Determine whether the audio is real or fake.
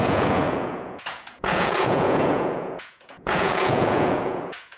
fake